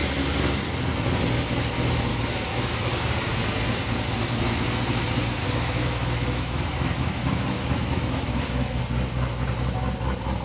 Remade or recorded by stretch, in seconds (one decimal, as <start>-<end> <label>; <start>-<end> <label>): 0.0-2.1 recorded; 2.1-3.0 remade; 3.0-5.4 recorded; 5.4-8.8 remade; 8.8-10.4 recorded

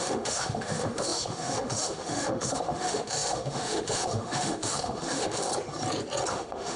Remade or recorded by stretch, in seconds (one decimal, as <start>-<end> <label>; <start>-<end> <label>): 0.0-5.5 remade; 5.5-6.3 recorded; 6.3-6.8 remade

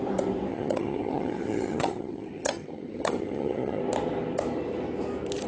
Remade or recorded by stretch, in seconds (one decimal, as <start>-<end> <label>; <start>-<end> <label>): 0.0-0.5 recorded; 0.5-3.8 remade; 3.8-5.5 recorded